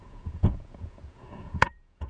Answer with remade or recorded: remade